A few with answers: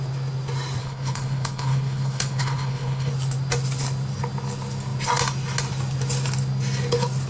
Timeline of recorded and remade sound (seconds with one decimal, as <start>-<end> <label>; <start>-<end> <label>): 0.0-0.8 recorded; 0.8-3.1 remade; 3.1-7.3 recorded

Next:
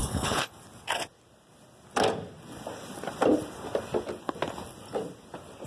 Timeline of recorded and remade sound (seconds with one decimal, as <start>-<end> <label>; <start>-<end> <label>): 0.0-0.5 remade; 0.5-5.7 recorded

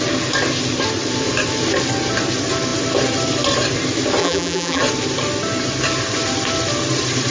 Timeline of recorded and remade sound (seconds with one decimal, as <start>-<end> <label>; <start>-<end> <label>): 0.0-4.2 recorded; 4.2-4.8 remade; 4.8-7.3 recorded

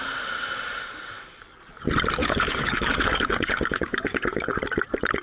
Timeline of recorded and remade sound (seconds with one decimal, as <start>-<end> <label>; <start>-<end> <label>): 0.0-2.2 recorded; 2.2-4.6 remade; 4.6-5.2 recorded

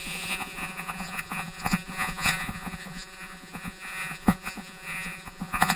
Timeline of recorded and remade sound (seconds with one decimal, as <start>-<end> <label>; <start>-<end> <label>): 0.0-5.8 remade

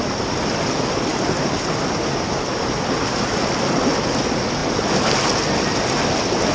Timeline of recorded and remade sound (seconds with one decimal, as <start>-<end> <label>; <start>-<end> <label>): 0.0-6.5 recorded

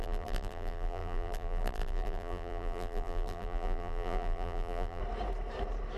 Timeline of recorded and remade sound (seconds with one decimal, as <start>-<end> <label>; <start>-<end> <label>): 0.0-5.0 remade; 5.0-6.0 recorded

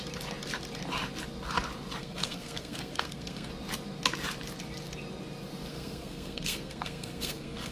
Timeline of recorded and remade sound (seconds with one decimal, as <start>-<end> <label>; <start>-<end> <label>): 0.0-2.0 recorded; 2.0-3.5 remade; 3.5-5.7 recorded; 5.7-7.7 remade